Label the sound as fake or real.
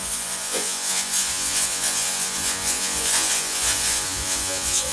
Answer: fake